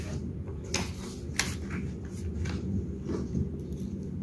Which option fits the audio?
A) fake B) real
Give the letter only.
B